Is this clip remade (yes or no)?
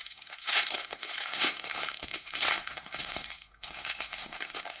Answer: yes